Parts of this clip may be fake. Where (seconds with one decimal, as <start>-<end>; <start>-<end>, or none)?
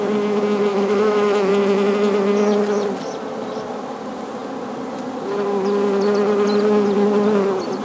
0.7-1.5